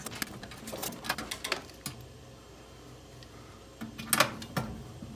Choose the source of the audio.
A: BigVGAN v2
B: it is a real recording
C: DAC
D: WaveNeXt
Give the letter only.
B